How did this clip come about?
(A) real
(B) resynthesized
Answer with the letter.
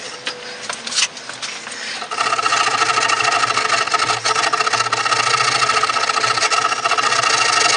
A